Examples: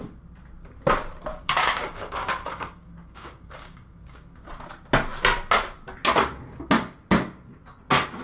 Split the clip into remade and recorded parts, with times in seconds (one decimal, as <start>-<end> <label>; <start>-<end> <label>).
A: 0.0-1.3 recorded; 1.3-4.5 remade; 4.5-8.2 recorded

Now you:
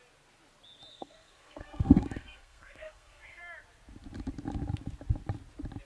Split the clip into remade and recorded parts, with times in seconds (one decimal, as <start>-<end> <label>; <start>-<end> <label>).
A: 0.0-0.9 recorded; 0.9-3.4 remade; 3.4-5.9 recorded

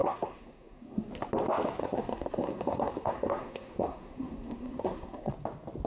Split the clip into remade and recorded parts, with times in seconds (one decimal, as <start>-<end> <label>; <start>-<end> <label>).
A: 0.0-1.1 remade; 1.1-1.8 recorded; 1.8-5.3 remade; 5.3-5.9 recorded